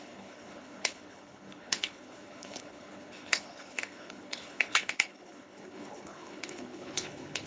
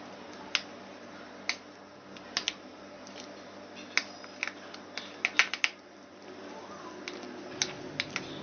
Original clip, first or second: second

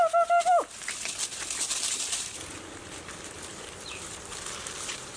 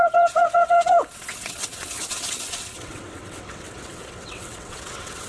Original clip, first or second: first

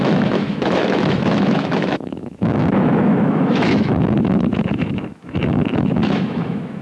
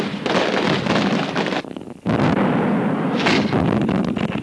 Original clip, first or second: second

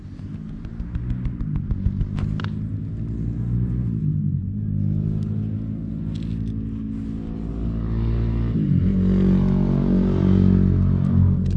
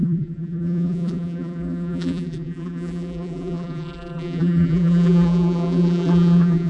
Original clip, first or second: first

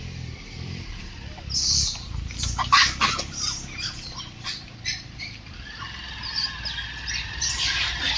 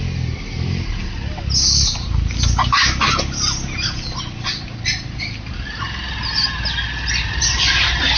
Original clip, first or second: second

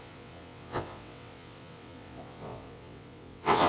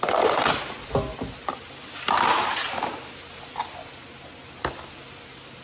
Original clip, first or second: second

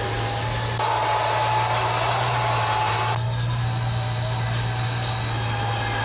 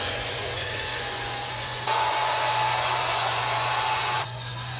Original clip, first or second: first